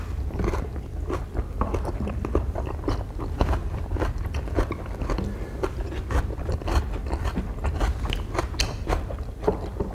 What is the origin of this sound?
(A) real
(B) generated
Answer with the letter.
A